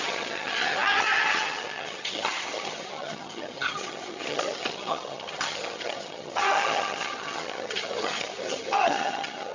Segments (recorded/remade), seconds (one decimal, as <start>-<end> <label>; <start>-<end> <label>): 0.0-9.5 remade